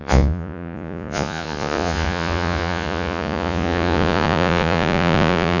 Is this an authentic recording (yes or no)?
no